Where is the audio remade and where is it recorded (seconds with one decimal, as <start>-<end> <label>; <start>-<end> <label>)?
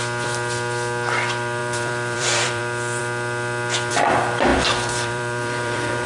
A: 0.0-1.6 recorded; 1.6-2.6 remade; 2.6-4.5 recorded; 4.5-6.1 remade